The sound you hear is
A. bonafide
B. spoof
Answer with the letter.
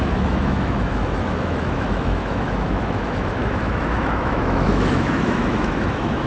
B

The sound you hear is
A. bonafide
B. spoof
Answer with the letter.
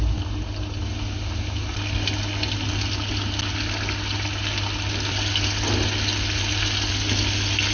A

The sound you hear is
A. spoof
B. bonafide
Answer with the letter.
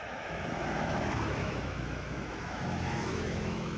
A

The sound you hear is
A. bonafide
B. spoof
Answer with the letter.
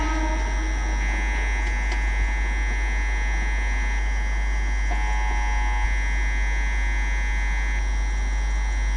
A